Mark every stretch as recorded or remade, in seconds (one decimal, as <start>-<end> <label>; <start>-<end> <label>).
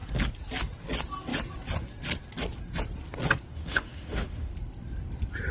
0.0-3.5 recorded; 3.5-4.5 remade; 4.5-5.5 recorded